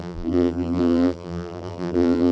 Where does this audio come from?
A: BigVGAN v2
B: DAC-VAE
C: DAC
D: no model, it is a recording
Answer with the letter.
A